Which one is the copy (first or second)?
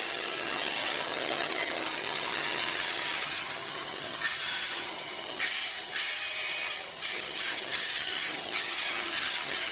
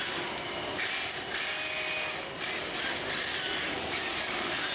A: first